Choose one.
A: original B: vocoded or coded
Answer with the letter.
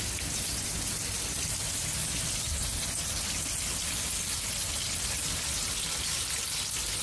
A